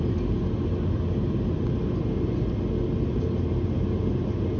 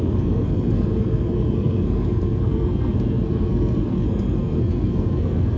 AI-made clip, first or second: second